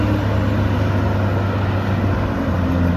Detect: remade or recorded recorded